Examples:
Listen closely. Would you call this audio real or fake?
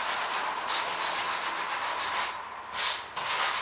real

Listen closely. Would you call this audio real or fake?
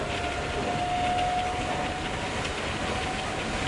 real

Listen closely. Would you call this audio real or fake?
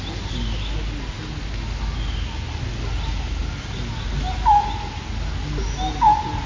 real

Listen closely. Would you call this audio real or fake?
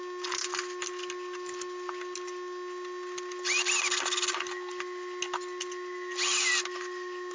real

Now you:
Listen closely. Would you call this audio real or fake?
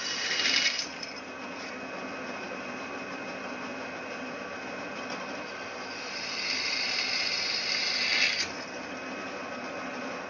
real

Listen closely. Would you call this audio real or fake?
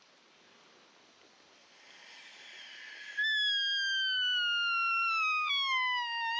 real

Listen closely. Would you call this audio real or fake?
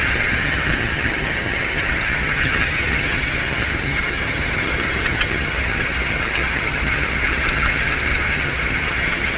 fake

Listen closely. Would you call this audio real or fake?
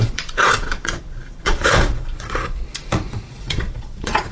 fake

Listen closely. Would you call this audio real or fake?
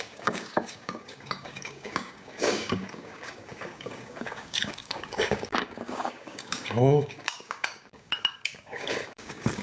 fake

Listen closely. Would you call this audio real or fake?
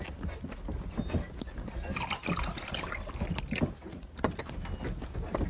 real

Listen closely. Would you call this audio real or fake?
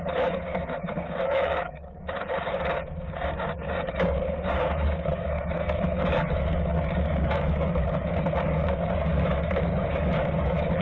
fake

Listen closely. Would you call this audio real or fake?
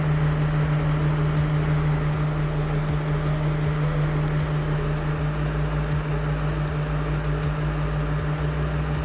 real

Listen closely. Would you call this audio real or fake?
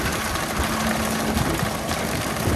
real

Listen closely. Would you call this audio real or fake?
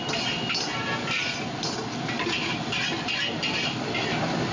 real